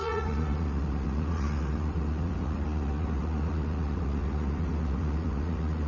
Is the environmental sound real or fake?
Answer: fake